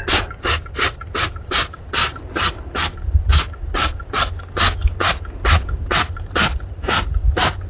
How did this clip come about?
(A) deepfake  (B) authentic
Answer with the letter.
B